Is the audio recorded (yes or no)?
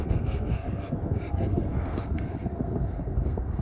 no